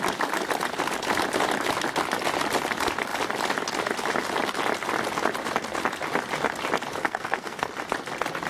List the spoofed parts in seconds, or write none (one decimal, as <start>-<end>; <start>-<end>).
7.0-7.7